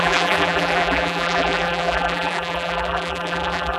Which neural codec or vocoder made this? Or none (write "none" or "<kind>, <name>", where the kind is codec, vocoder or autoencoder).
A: vocoder, BigVGAN v2